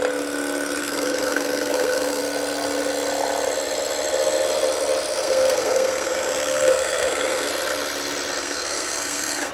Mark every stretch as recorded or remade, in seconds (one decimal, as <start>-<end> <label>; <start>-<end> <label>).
0.0-0.8 recorded; 0.8-2.2 remade; 2.2-5.1 recorded; 5.1-7.5 remade; 7.5-8.4 recorded; 8.4-9.5 remade